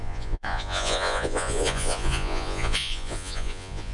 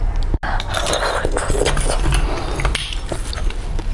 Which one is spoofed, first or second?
first